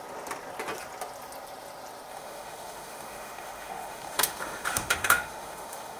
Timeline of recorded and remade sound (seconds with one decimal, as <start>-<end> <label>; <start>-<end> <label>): 0.0-2.1 recorded; 2.1-6.0 remade